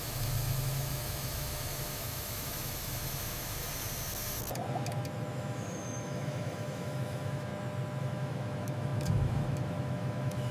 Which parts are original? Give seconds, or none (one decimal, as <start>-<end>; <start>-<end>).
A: 3.6-5.3; 7.5-8.0